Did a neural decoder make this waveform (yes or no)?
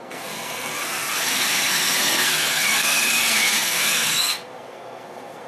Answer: yes